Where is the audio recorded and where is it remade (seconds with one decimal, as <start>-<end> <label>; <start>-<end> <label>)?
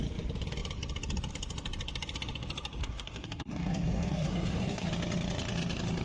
0.0-2.8 recorded; 2.8-4.9 remade; 4.9-6.0 recorded